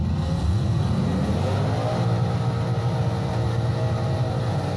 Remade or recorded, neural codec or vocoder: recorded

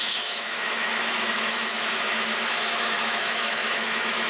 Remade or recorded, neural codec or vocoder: remade, autoencoder, DAC-VAE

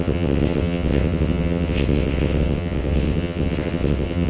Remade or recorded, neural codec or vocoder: remade, vocoder, WaveNeXt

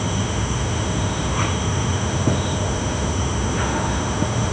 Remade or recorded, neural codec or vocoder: remade, autoencoder, DAC-VAE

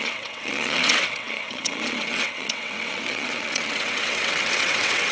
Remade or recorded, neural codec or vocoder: remade, vocoder, WaveNeXt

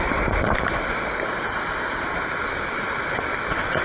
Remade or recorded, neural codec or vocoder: recorded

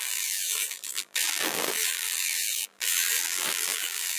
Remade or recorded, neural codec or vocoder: remade, vocoder, BigVGAN v2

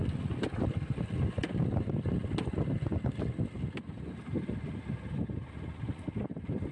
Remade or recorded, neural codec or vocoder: recorded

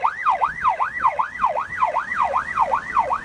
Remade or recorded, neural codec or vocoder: remade, vocoder, WaveNeXt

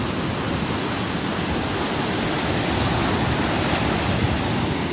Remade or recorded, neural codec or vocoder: recorded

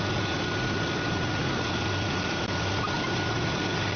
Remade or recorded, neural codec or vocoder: recorded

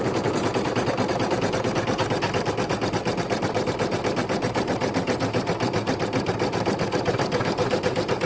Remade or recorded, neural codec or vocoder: recorded